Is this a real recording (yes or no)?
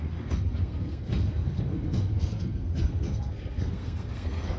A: no